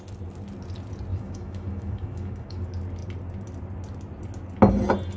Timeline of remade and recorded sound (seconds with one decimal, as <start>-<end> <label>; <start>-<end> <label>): 0.0-1.1 recorded; 1.1-2.6 remade; 2.6-5.2 recorded